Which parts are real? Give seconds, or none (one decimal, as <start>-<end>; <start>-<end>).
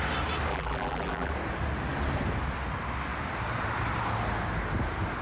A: 0.0-0.5; 1.3-5.2